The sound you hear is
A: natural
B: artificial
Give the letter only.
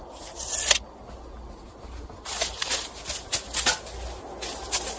A